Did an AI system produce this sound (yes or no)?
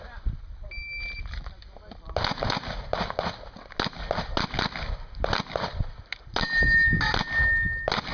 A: no